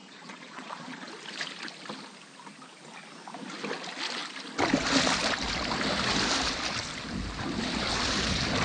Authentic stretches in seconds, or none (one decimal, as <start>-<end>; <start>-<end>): 1.1-8.6